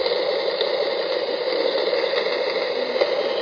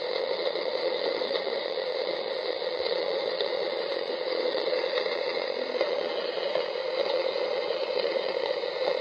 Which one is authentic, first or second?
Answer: first